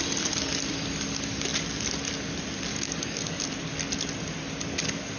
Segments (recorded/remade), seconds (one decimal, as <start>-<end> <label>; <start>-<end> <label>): 0.0-2.7 recorded; 2.7-3.4 remade; 3.4-5.2 recorded